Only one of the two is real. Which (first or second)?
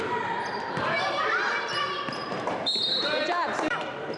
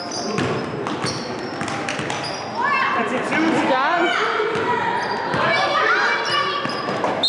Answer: second